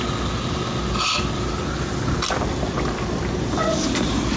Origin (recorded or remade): recorded